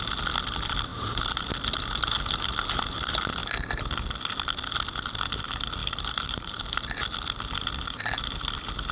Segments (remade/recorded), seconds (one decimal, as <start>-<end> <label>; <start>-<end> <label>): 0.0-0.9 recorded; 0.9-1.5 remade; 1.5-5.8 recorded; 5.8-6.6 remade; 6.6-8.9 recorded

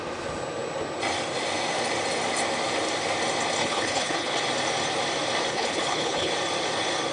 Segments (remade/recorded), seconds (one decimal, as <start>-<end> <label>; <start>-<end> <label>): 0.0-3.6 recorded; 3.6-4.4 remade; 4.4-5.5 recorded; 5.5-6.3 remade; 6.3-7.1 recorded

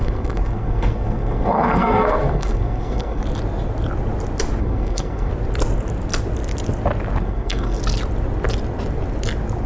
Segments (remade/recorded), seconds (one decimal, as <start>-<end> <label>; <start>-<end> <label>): 0.0-3.2 remade; 3.2-4.6 recorded; 4.6-5.3 remade; 5.3-7.2 recorded; 7.2-7.8 remade; 7.8-9.7 recorded